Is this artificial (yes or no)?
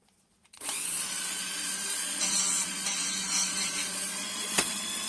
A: yes